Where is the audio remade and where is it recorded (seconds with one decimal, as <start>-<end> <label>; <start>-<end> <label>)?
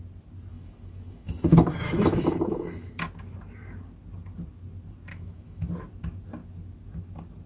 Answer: 0.0-0.5 recorded; 0.5-2.9 remade; 2.9-5.1 recorded; 5.1-5.7 remade; 5.7-7.5 recorded